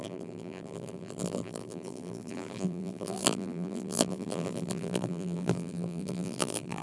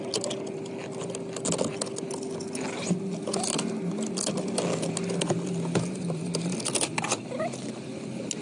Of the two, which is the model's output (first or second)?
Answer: first